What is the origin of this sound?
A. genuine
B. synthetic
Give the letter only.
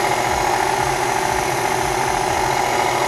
A